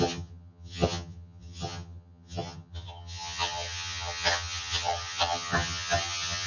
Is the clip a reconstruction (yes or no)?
yes